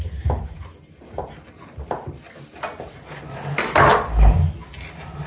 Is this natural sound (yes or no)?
yes